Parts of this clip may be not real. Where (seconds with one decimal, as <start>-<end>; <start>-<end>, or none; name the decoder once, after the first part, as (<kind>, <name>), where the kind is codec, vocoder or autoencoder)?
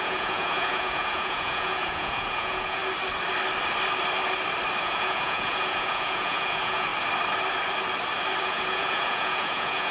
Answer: 0.0-2.8 (vocoder, Vocos); 4.8-6.9; 8.4-9.9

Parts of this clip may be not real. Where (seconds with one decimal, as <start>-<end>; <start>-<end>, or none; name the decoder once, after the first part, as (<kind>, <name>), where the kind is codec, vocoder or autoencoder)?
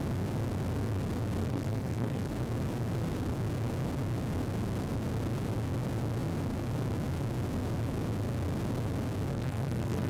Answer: 1.4-2.3 (codec, SNAC); 9.3-10.1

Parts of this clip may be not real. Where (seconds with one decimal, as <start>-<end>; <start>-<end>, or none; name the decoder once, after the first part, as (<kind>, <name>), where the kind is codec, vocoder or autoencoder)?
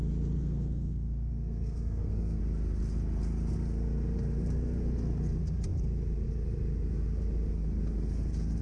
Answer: 0.4-2.4 (codec, SNAC)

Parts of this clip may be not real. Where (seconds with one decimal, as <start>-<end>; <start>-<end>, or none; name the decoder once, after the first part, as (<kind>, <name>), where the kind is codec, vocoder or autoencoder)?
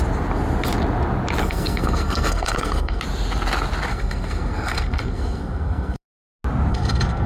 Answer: 1.4-3.0 (codec, SNAC); 3.9-6.3; 6.7-7.3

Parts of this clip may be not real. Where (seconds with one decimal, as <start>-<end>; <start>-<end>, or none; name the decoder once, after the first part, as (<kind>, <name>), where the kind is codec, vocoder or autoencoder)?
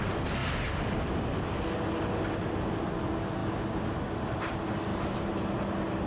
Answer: 4.9-6.1 (vocoder, BigVGAN v2)